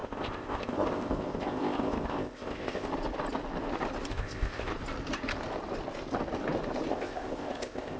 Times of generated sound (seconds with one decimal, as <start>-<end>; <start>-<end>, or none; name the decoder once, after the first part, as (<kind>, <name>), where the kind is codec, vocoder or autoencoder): 0.0-2.9 (codec, ZipCodec); 4.1-4.7; 6.9-8.0